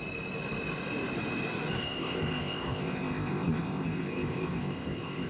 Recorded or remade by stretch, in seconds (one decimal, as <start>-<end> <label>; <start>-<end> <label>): 0.0-1.8 recorded; 1.8-5.3 remade